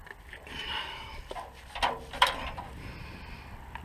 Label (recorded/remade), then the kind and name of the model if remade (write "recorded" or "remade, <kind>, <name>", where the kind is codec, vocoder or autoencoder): recorded